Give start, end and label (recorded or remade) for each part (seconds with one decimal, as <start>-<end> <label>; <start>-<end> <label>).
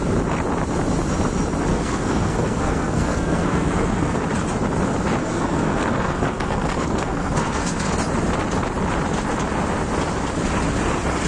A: 0.0-1.7 recorded; 1.7-4.2 remade; 4.2-5.2 recorded; 5.2-7.9 remade; 7.9-11.3 recorded